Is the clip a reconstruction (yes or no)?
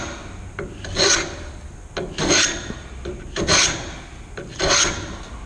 no